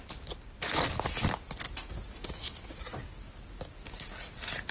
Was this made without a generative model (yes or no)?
yes